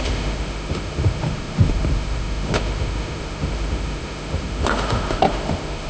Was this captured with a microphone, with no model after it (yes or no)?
no